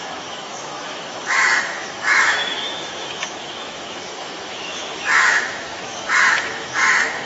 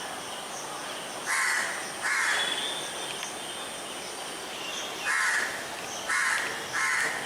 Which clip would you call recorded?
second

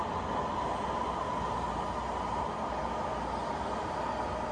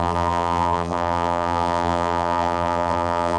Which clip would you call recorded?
first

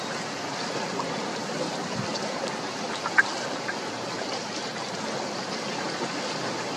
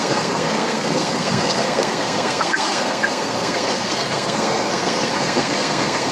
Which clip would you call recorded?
first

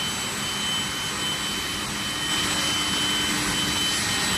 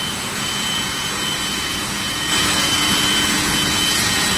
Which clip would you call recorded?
first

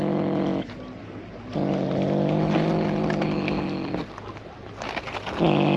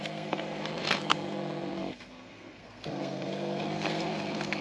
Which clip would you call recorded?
first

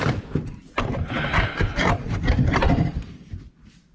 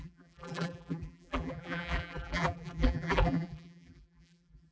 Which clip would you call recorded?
first